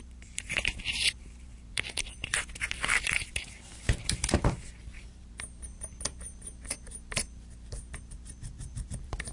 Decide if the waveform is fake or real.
fake